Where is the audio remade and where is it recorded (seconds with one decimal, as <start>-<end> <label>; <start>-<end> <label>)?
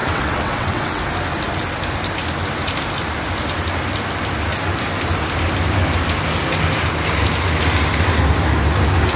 0.0-1.0 remade; 1.0-9.2 recorded